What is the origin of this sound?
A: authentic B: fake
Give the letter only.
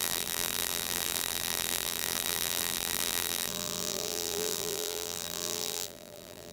B